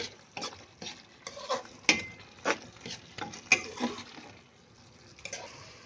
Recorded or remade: recorded